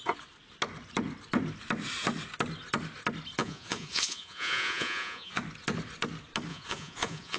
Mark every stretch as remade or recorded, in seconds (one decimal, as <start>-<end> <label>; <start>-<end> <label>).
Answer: 0.0-3.4 recorded; 3.4-5.4 remade; 5.4-6.5 recorded; 6.5-7.4 remade